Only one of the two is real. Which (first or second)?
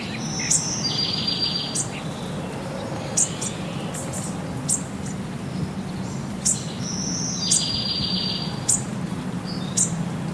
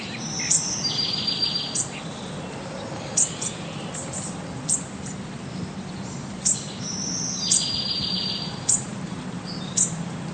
first